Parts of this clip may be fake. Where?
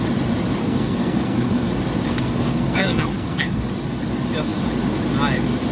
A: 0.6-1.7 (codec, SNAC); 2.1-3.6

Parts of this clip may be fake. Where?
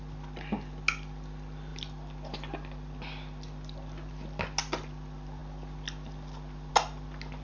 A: none